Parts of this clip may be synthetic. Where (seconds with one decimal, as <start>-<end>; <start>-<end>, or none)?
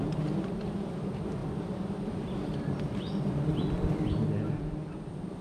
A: 1.4-3.6